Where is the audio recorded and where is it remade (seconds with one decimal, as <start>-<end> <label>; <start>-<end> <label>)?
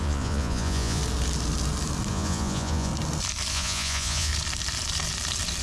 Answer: 0.0-1.0 remade; 1.0-2.1 recorded; 2.1-2.9 remade; 2.9-3.5 recorded; 3.5-4.3 remade; 4.3-5.6 recorded